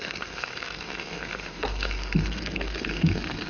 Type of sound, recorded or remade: remade